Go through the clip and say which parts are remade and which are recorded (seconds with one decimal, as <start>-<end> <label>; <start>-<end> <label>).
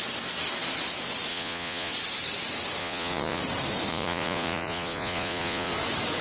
0.0-1.3 recorded; 1.3-1.9 remade; 1.9-2.8 recorded; 2.8-3.4 remade; 3.4-3.9 recorded; 3.9-5.7 remade; 5.7-6.2 recorded